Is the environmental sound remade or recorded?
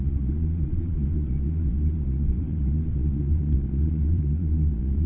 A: remade